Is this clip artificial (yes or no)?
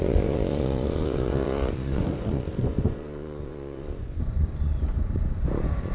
yes